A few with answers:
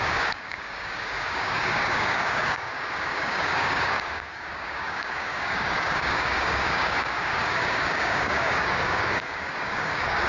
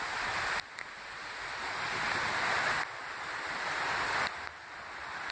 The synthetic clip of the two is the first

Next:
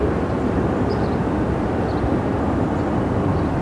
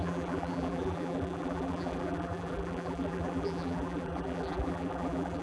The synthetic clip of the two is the second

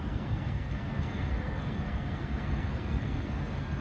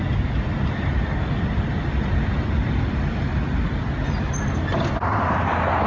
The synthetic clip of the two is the first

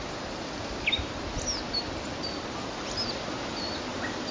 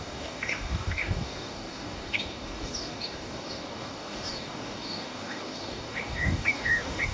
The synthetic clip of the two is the second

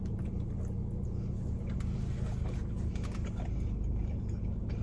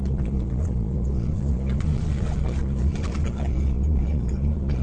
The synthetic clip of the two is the second